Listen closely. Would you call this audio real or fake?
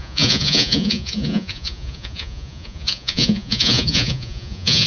fake